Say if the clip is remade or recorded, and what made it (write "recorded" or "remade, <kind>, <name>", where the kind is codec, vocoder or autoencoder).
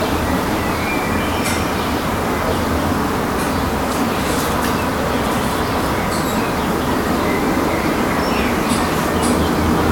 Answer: recorded